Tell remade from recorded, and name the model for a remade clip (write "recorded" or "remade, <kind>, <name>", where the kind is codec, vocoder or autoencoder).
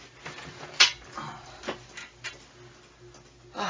recorded